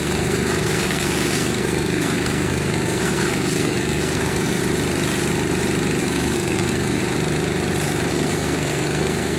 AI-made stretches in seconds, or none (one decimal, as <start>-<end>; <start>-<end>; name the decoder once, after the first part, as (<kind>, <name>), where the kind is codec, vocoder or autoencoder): 0.0-4.6 (codec, SNAC); 6.0-7.0; 8.1-9.4